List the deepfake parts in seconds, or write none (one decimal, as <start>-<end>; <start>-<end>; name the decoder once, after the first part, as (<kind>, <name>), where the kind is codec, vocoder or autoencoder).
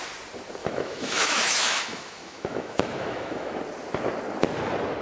0.6-3.6 (autoencoder, DAC-VAE)